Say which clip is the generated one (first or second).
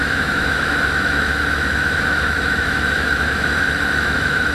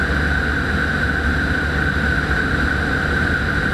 first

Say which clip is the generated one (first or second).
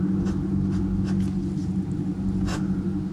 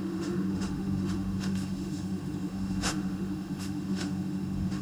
second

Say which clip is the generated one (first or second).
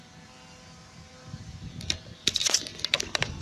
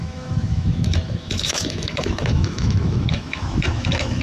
second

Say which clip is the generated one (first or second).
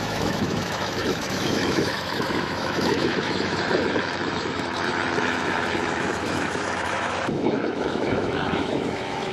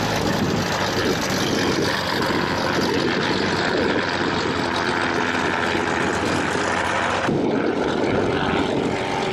first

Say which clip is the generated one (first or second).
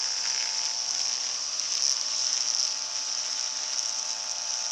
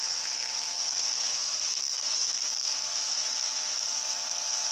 second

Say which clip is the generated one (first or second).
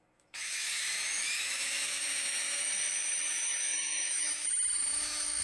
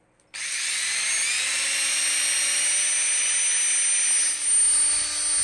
first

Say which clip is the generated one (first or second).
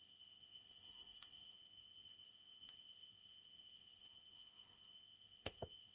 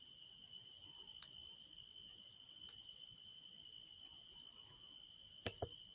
first